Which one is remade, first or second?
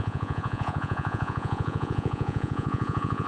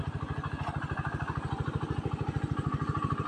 first